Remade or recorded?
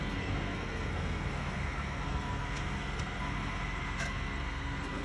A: remade